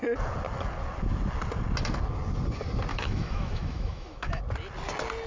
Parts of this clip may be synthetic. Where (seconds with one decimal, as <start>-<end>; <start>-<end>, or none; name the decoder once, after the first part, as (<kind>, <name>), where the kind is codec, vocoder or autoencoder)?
2.9-4.4 (autoencoder, DAC-VAE)